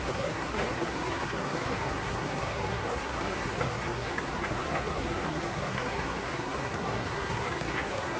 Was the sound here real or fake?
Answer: fake